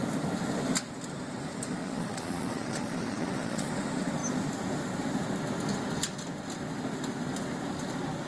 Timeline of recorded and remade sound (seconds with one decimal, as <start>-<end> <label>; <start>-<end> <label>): 0.0-1.8 recorded; 1.8-3.7 remade; 3.7-8.3 recorded